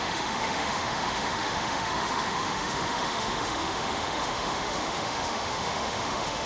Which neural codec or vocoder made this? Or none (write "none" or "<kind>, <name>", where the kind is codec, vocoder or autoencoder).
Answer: autoencoder, DAC-VAE